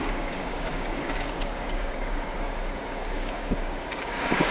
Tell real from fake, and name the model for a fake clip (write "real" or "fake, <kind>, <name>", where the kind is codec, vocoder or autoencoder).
fake, codec, DAC